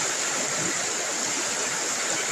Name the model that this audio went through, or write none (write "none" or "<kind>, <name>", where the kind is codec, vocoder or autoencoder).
none